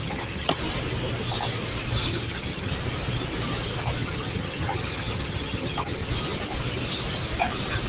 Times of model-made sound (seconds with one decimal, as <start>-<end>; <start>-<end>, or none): 0.0-0.6; 2.1-2.7; 4.0-6.1